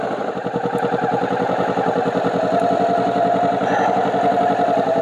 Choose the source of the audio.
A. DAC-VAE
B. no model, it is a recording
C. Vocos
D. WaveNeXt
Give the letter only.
B